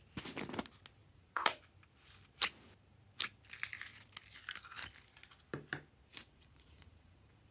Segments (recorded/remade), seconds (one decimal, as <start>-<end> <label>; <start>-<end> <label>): 0.0-1.0 recorded; 1.0-1.6 remade; 1.6-6.1 recorded; 6.1-7.5 remade